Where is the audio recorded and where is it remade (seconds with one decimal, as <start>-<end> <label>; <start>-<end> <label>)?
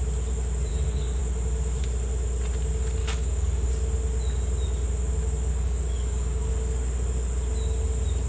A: 0.0-0.7 recorded; 0.7-1.2 remade; 1.2-3.0 recorded; 3.0-3.7 remade; 3.7-5.5 recorded; 5.5-6.5 remade; 6.5-8.3 recorded